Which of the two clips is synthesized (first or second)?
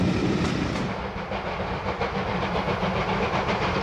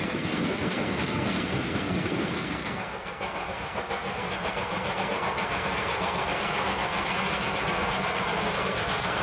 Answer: second